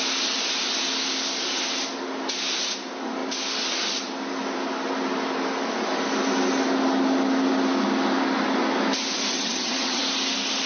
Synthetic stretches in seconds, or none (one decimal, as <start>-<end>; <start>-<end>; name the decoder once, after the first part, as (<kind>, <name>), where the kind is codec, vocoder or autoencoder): 9.3-10.0 (vocoder, HiFi-GAN)